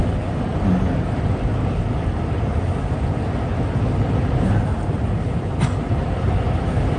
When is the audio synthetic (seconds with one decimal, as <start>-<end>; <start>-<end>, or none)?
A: none